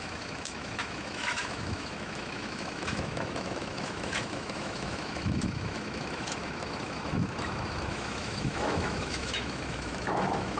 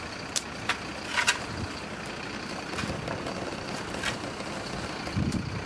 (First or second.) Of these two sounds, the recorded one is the second